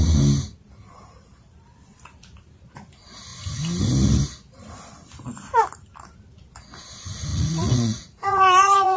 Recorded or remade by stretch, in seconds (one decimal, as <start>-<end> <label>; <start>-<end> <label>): 0.0-7.3 recorded; 7.3-9.0 remade